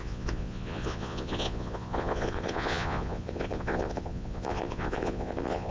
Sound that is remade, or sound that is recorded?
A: remade